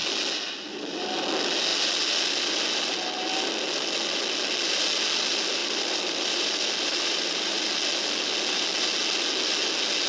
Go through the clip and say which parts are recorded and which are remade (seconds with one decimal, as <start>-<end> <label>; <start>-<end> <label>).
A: 0.0-5.6 recorded; 5.6-7.6 remade; 7.6-10.1 recorded